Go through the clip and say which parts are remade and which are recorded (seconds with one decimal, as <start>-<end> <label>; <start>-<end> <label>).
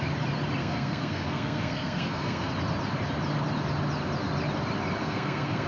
0.0-0.6 recorded; 0.6-2.5 remade; 2.5-5.0 recorded; 5.0-5.7 remade